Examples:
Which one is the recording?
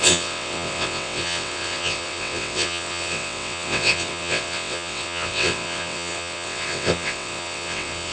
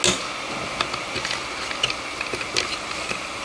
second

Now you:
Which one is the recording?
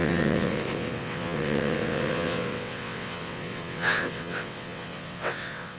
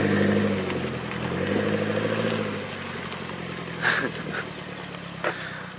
second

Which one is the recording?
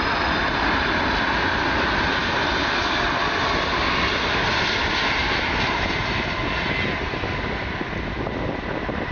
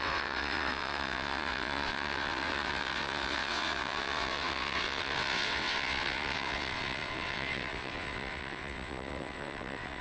first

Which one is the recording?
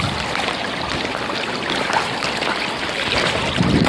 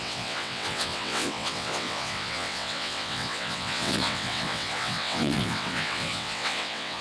first